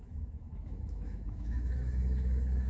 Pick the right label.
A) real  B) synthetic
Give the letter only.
B